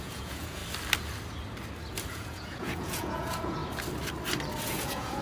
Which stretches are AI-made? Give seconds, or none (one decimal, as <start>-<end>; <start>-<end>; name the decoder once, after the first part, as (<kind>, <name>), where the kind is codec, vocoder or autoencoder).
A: 0.0-0.6 (vocoder, Vocos); 2.1-3.6; 4.6-5.2